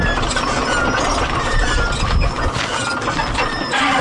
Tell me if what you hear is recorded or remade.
recorded